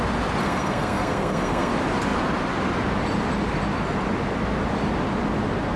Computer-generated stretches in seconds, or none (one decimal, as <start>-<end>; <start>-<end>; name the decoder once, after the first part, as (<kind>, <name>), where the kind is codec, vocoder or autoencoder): 0.4-1.7 (codec, SNAC)